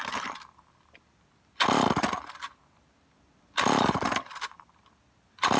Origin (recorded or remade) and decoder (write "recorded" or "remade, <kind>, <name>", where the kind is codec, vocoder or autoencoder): recorded